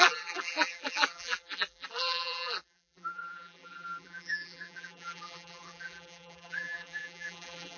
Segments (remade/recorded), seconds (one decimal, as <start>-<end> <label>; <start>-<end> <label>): 0.0-7.8 remade